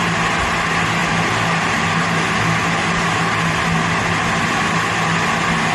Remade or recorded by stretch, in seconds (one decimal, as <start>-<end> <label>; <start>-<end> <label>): 0.0-5.7 recorded